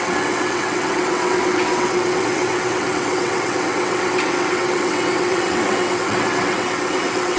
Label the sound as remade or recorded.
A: remade